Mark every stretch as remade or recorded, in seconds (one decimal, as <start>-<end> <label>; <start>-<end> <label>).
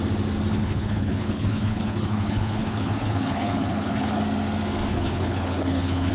0.0-0.5 recorded; 0.5-4.2 remade; 4.2-4.9 recorded; 4.9-6.1 remade